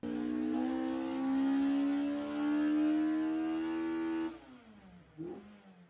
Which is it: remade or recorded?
recorded